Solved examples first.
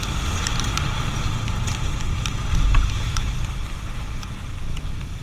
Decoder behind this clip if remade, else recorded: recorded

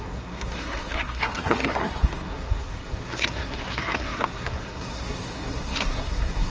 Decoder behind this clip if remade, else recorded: remade, codec, SNAC